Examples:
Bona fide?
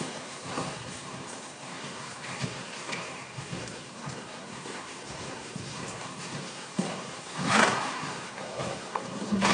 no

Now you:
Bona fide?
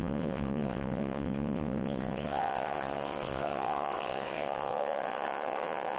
no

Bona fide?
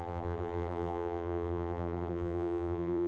no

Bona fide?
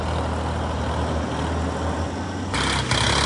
yes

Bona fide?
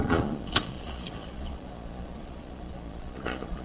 no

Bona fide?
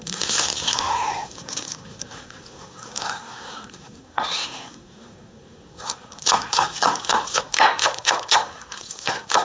no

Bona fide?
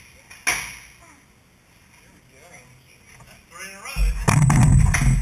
yes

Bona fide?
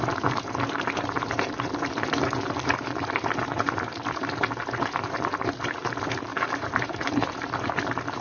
no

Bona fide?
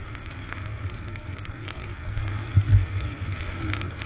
no